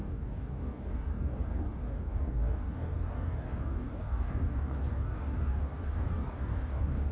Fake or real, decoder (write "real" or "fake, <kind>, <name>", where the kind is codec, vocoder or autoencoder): fake, codec, DAC